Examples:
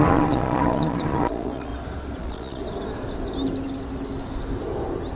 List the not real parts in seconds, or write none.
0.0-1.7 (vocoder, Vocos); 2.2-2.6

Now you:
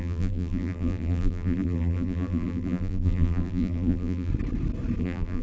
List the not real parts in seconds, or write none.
0.0-4.3 (vocoder, BigVGAN v2); 5.0-5.4

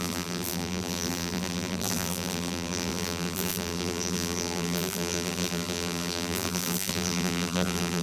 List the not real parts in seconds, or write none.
0.0-8.0 (vocoder, BigVGAN v2)

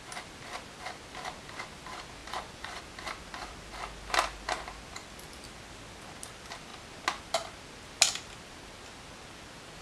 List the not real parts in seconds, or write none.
2.2-2.8 (vocoder, Vocos)

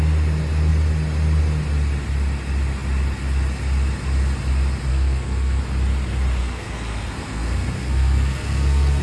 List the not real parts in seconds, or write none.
4.9-5.6 (codec, SNAC); 6.4-9.0